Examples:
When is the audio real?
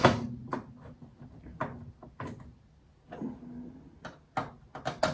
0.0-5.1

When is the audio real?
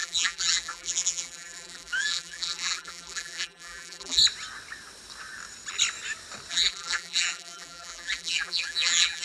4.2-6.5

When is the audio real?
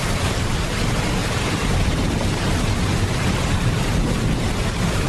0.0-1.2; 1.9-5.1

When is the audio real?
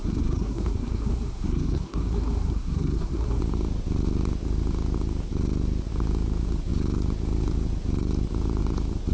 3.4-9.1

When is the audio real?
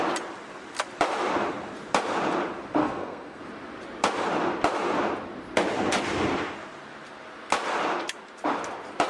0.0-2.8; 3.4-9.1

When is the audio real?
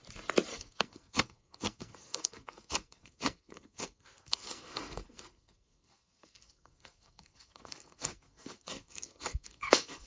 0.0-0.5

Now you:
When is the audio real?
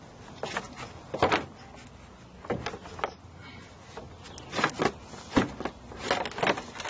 0.0-6.9